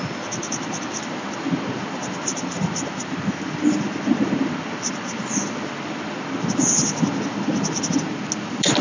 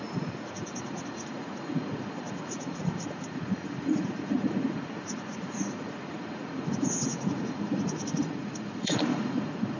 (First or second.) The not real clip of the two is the second